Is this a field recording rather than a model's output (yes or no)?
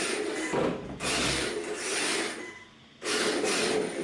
yes